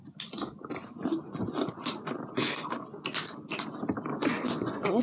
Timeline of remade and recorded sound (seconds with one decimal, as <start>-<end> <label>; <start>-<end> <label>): 0.0-4.1 recorded; 4.1-5.0 remade